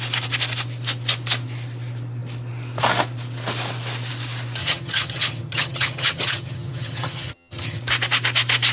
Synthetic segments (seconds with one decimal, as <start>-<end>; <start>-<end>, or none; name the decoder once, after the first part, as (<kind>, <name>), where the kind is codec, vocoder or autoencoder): 4.6-7.8 (vocoder, HiFi-GAN)

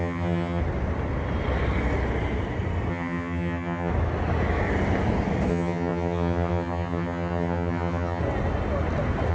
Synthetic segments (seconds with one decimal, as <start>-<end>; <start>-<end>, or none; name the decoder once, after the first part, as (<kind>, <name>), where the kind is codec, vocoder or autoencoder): 0.0-0.6 (vocoder, HiFi-GAN); 2.9-3.9; 5.5-8.2

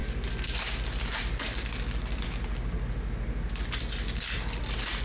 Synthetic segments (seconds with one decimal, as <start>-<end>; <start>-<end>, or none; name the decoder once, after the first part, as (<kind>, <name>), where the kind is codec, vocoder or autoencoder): none

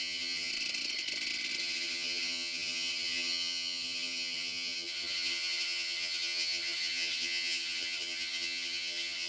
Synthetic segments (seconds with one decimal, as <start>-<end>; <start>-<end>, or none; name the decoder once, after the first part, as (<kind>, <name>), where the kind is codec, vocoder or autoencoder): 0.0-0.5 (vocoder, HiFi-GAN); 1.6-9.3

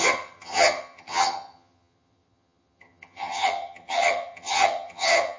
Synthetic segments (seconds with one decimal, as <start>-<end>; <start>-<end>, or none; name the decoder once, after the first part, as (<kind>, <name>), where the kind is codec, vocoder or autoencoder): 0.0-5.4 (vocoder, HiFi-GAN)